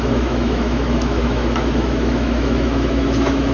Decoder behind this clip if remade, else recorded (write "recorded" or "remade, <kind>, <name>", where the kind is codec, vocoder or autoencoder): remade, autoencoder, DAC-VAE